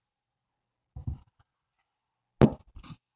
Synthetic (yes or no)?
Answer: no